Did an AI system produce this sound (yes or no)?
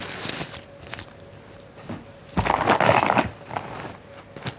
no